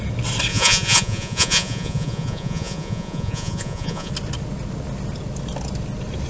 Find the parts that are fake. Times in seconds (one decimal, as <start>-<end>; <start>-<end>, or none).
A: 0.5-4.1